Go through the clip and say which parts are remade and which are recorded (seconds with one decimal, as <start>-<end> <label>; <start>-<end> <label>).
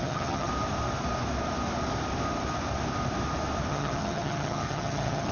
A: 0.0-0.5 remade; 0.5-3.7 recorded; 3.7-5.3 remade